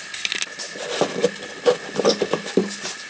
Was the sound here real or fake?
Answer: real